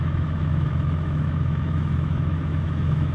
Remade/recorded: remade